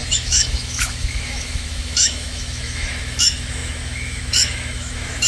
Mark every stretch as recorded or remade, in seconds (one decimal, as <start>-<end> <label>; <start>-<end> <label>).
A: 0.0-5.3 remade